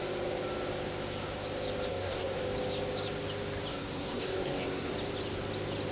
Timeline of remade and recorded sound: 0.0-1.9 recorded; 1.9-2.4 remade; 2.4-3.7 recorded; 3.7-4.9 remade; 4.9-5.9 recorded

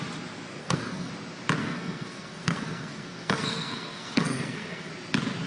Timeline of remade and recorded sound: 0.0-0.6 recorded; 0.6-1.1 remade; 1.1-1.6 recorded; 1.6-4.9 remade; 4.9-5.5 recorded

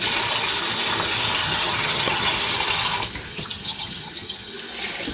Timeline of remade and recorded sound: 0.0-1.4 recorded; 1.4-2.3 remade; 2.3-3.3 recorded; 3.3-4.5 remade; 4.5-5.1 recorded

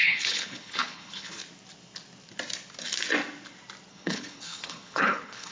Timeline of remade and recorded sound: 0.0-1.4 remade; 1.4-3.9 recorded; 3.9-5.5 remade

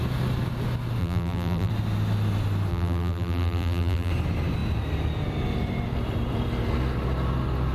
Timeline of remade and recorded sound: 0.0-1.0 recorded; 1.0-1.7 remade; 1.7-2.7 recorded; 2.7-4.1 remade; 4.1-7.7 recorded

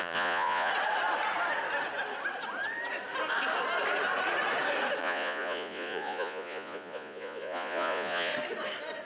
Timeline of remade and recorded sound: 0.0-0.7 remade; 0.7-5.0 recorded; 5.0-8.3 remade; 8.3-9.1 recorded

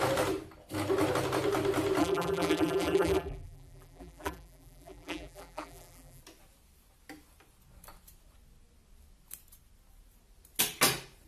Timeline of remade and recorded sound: 0.0-2.0 recorded; 2.0-6.2 remade; 6.2-11.3 recorded

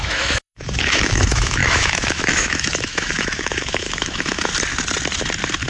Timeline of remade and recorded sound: 0.0-4.5 remade; 4.5-5.7 recorded